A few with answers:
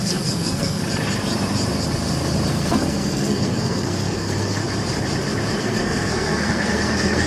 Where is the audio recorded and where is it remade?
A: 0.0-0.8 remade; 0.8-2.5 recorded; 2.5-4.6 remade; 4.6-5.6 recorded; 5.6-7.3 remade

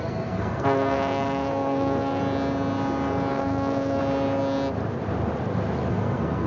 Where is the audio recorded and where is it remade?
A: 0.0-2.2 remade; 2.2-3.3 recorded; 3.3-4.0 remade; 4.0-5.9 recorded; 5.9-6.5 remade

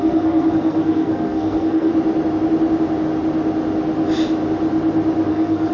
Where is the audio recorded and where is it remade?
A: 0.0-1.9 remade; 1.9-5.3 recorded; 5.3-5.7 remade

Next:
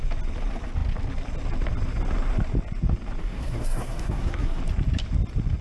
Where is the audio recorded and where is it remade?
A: 0.0-3.2 recorded; 3.2-4.6 remade; 4.6-5.6 recorded

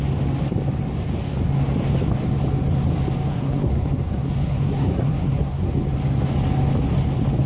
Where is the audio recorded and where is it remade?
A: 0.0-3.3 recorded; 3.3-5.8 remade; 5.8-7.5 recorded

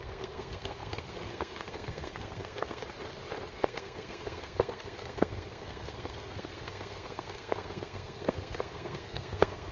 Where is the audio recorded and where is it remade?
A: 0.0-2.8 remade; 2.8-3.5 recorded; 3.5-9.7 remade

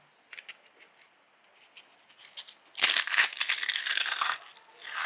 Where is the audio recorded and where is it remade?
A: 0.0-3.8 recorded; 3.8-4.4 remade; 4.4-5.1 recorded